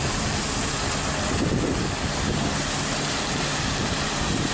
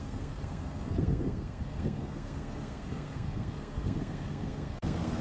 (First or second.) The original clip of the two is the first